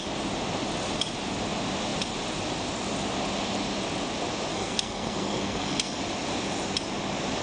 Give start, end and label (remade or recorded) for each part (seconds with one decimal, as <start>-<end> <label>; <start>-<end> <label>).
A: 0.0-4.5 recorded; 4.5-6.0 remade; 6.0-7.4 recorded